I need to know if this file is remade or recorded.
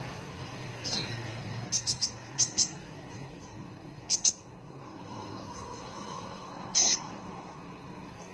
remade